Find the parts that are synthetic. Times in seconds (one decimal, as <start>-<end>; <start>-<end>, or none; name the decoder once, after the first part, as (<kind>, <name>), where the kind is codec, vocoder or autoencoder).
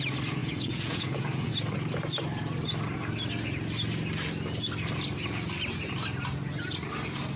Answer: 0.4-1.5 (vocoder, Vocos)